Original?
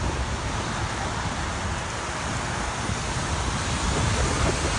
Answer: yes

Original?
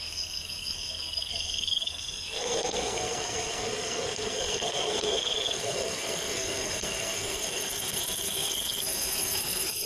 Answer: no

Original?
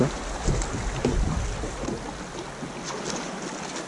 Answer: yes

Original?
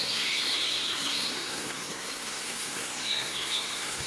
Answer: no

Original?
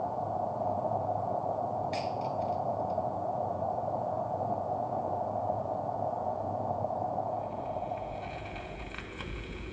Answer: no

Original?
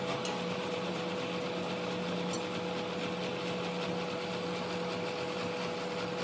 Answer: yes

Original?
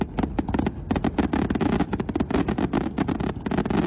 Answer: yes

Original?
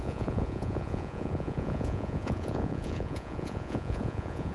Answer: no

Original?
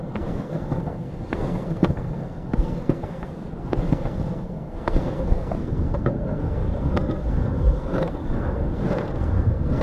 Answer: no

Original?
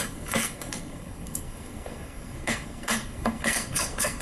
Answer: no